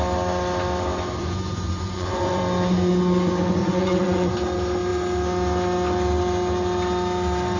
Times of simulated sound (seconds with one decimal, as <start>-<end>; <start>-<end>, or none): 1.2-2.4; 3.6-4.3